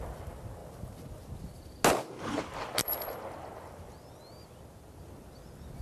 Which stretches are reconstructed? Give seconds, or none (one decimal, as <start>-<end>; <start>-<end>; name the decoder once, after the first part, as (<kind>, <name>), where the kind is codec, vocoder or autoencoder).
none